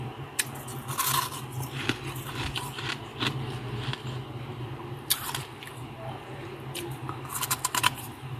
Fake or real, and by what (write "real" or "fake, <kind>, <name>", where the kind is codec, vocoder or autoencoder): real